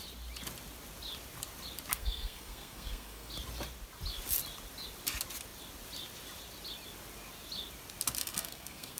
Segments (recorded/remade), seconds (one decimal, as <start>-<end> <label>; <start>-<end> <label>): 0.0-1.9 recorded; 1.9-3.3 remade; 3.3-8.2 recorded; 8.2-9.0 remade